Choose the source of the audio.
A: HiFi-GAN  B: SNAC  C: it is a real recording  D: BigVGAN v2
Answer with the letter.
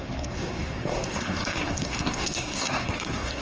B